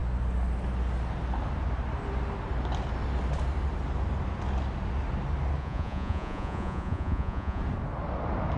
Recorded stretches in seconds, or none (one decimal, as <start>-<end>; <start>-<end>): 0.0-5.6; 7.6-8.6